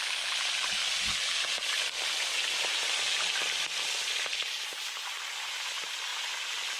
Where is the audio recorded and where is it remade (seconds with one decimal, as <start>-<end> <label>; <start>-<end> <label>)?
0.0-6.8 recorded